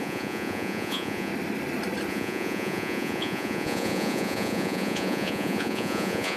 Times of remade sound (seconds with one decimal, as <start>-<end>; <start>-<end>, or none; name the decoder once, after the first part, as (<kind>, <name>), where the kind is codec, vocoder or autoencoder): 0.0-1.3 (vocoder, Vocos); 2.1-6.4

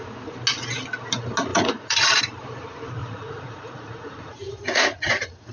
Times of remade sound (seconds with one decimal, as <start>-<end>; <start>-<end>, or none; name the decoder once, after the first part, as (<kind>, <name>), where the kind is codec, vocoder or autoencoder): 1.5-2.2 (vocoder, Vocos); 3.0-5.5

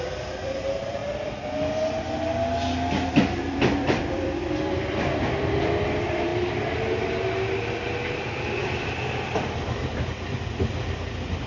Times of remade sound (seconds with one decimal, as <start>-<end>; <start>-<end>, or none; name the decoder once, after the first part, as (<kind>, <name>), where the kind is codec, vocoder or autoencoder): 0.0-1.0 (vocoder, BigVGAN v2); 3.1-6.3; 8.6-11.5

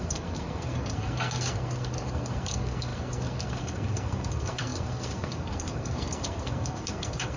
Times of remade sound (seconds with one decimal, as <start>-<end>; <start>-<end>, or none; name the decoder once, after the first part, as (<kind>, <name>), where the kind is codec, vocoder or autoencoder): 0.0-7.4 (codec, SNAC)

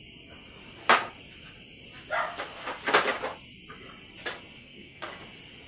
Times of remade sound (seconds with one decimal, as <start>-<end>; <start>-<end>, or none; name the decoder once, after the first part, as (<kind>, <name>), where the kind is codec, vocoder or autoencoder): 4.6-5.1 (codec, SNAC)

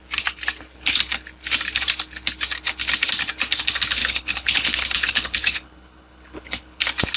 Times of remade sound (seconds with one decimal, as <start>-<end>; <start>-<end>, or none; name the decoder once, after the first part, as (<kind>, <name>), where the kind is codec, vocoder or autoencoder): 4.0-6.8 (codec, HILCodec)

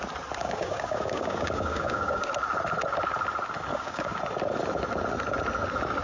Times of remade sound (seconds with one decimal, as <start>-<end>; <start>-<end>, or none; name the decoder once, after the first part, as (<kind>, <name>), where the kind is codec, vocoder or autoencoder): 0.4-2.3 (codec, DAC); 3.7-4.2

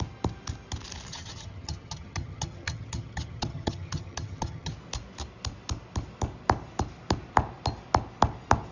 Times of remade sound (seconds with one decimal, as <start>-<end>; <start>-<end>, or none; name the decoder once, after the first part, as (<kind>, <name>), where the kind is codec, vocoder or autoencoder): 1.1-4.7 (vocoder, HiFi-GAN)